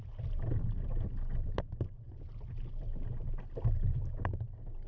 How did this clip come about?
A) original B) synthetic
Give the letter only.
A